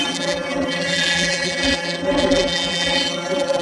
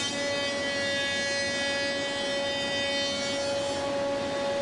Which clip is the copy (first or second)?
first